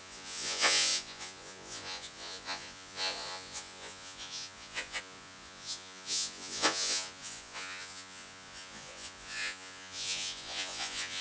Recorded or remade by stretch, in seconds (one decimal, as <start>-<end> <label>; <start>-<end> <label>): 0.0-11.2 remade